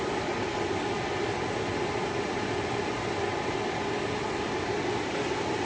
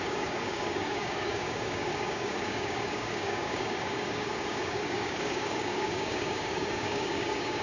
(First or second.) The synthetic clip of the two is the second